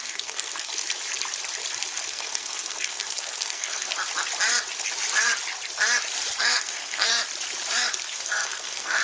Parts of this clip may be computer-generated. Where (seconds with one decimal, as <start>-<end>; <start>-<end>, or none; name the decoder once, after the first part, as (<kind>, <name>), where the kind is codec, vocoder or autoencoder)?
0.0-0.7 (codec, SNAC); 2.1-3.9; 6.4-7.1; 8.1-9.0